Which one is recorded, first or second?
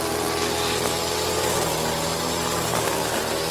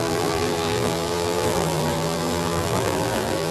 first